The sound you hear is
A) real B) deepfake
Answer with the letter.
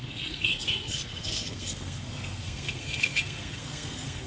B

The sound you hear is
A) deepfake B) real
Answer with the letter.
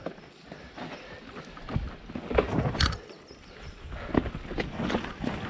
B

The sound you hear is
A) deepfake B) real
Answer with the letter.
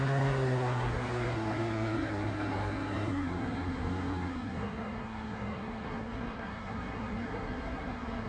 A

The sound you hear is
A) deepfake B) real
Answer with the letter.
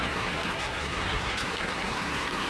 A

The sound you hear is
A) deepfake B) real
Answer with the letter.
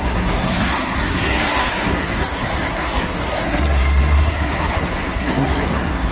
A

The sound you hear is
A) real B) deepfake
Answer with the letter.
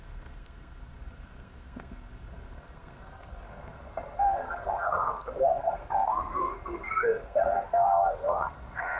B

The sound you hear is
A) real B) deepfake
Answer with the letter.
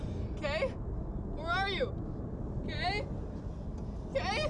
A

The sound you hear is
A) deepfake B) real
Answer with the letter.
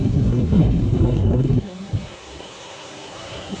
A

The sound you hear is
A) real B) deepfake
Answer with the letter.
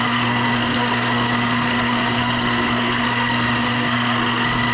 B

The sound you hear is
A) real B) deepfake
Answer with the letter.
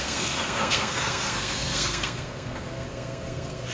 B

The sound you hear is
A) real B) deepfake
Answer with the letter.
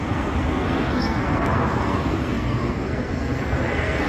B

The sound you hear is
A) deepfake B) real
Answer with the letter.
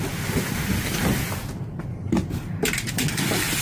B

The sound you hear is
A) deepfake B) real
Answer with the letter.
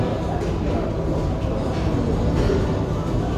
B